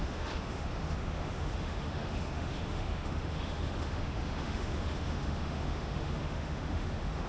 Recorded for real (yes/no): no